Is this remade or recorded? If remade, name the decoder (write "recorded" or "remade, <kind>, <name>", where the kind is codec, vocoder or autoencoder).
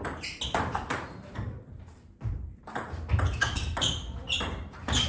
recorded